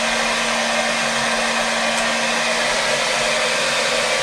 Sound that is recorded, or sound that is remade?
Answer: recorded